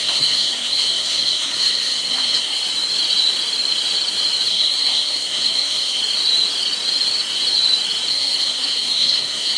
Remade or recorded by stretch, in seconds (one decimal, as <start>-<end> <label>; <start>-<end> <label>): 0.0-2.6 remade; 2.6-4.5 recorded; 4.5-6.0 remade; 6.0-8.1 recorded; 8.1-9.6 remade